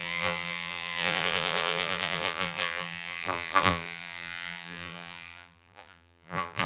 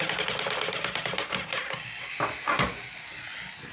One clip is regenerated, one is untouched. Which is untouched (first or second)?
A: second